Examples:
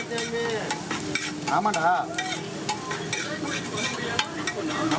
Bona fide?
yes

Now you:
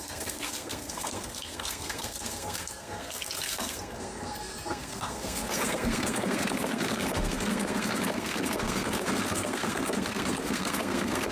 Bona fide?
no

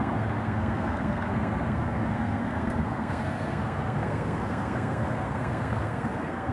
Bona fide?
no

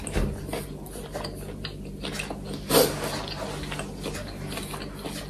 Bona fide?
yes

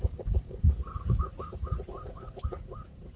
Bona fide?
no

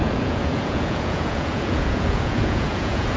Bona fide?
no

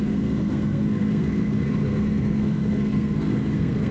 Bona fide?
no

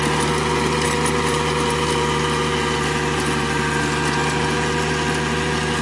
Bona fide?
yes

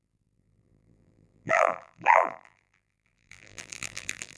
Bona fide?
no